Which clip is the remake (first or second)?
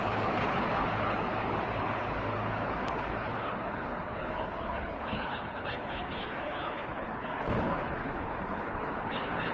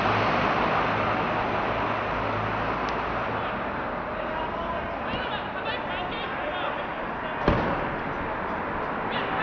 first